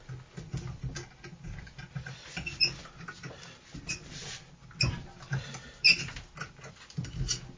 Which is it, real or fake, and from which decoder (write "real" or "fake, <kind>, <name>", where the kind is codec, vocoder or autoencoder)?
real